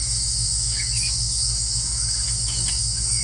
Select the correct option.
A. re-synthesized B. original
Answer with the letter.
A